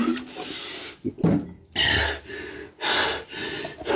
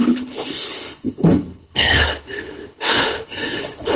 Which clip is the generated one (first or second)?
second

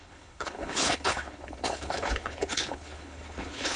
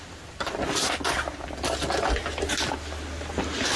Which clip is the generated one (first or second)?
first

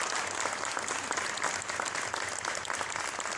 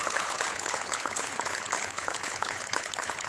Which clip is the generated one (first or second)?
second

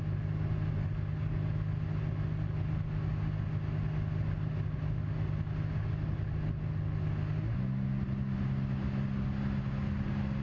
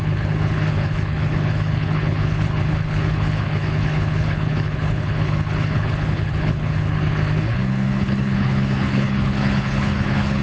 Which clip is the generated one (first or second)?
second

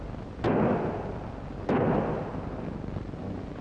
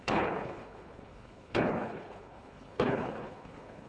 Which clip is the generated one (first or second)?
second